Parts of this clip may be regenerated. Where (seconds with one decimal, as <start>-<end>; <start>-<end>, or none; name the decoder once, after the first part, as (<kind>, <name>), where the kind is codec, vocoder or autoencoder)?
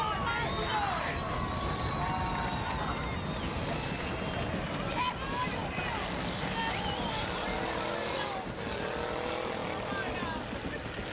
9.6-10.3 (vocoder, BigVGAN v2)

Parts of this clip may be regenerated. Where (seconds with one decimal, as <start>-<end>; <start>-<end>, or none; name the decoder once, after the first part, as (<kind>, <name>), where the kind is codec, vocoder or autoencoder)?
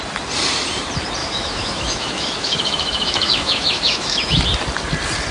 1.2-4.4 (autoencoder, DAC-VAE)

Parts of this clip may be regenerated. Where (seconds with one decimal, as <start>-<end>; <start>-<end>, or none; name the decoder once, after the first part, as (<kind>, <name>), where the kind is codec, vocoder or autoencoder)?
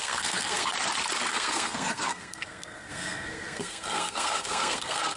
0.0-0.7 (codec, SNAC); 1.3-5.2